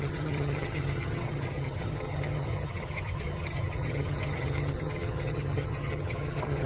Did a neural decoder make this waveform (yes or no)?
yes